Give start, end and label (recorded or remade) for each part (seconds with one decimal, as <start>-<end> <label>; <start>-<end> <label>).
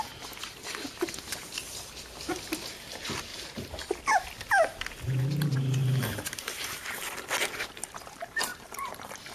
0.0-3.3 recorded; 3.3-4.0 remade; 4.0-5.8 recorded; 5.8-6.9 remade; 6.9-8.5 recorded; 8.5-9.3 remade